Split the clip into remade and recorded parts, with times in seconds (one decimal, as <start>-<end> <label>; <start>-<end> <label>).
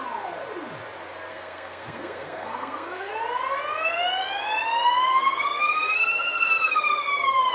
0.0-1.3 recorded; 1.3-3.1 remade; 3.1-5.1 recorded; 5.1-7.5 remade